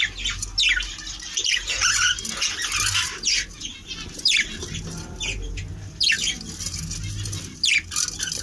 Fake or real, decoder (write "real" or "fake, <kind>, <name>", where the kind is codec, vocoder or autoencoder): real